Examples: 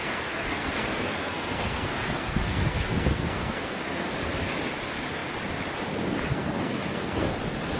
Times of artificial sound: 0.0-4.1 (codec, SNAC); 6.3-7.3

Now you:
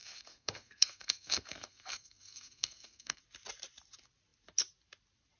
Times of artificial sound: 0.0-3.2 (codec, SNAC)

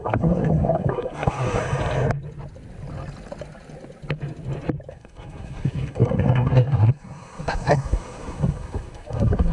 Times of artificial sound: 0.0-1.6 (codec, SNAC); 4.9-9.5

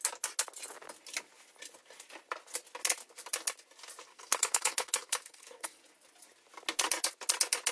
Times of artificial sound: 4.1-5.8 (codec, SNAC)

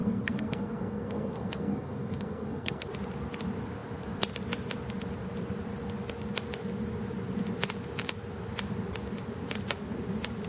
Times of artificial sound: 0.0-2.9 (codec, SNAC)